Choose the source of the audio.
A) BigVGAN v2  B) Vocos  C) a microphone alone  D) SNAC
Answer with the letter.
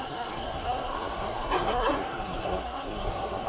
D